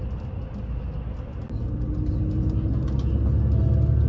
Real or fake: real